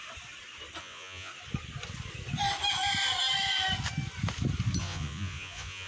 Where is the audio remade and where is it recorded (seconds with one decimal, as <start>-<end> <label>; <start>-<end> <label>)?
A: 0.0-0.8 recorded; 0.8-1.3 remade; 1.3-4.8 recorded; 4.8-5.9 remade